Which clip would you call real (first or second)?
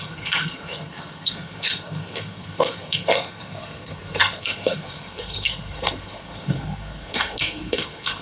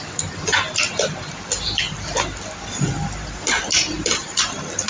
second